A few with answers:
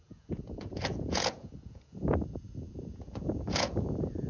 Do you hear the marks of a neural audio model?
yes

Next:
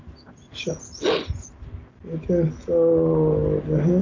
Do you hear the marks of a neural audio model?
no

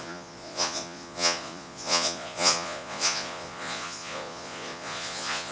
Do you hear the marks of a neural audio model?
yes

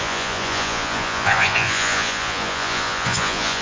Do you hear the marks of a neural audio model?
yes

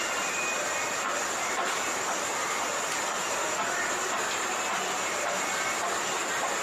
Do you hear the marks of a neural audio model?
no